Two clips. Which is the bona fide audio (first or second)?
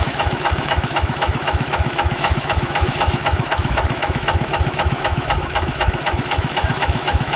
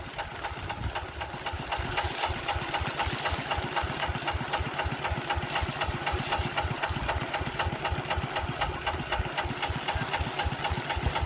second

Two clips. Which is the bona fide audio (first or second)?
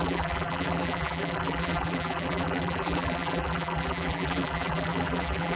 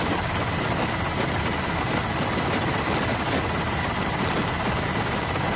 second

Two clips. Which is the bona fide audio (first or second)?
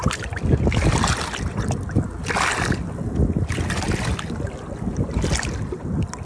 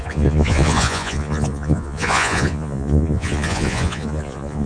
first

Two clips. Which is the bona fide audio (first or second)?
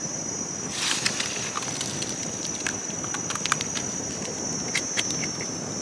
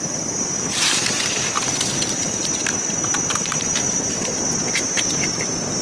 first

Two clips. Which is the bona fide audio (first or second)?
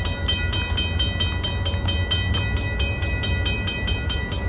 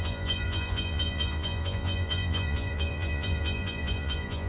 first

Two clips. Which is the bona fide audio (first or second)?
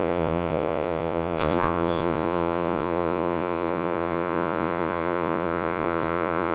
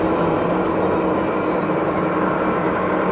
second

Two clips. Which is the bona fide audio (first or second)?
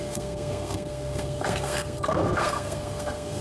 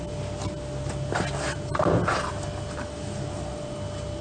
second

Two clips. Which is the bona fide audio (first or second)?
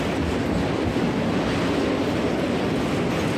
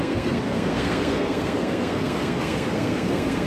first